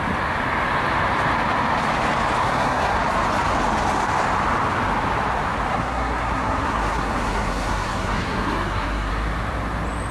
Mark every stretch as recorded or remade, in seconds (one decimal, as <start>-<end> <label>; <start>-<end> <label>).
0.0-2.4 recorded; 2.4-3.0 remade; 3.0-5.7 recorded; 5.7-9.1 remade; 9.1-10.1 recorded